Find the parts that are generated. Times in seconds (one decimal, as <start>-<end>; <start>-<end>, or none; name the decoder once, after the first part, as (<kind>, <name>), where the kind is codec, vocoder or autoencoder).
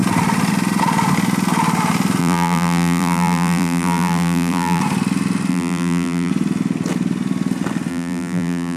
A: 2.2-4.8 (vocoder, BigVGAN v2); 5.5-6.3; 7.9-8.8